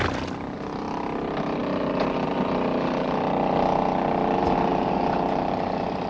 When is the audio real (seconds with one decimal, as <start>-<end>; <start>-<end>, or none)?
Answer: 0.0-6.1